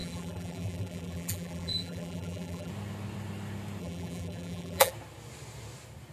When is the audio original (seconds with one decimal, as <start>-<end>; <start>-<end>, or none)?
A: 2.7-3.8; 4.9-6.1